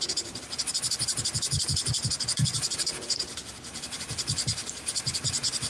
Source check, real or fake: real